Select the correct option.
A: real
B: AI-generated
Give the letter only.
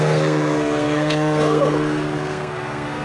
B